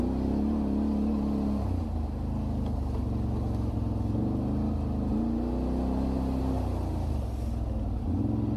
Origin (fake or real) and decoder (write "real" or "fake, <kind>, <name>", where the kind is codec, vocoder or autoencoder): real